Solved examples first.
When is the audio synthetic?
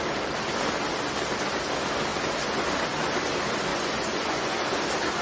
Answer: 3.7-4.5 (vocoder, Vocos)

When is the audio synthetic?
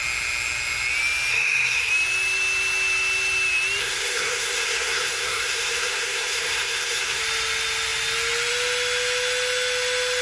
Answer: 1.3-1.9 (codec, SNAC); 3.8-7.2